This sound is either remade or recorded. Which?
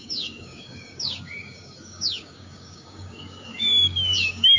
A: remade